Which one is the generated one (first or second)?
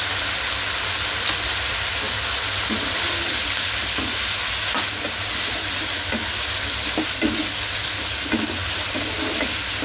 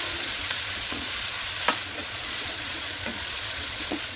second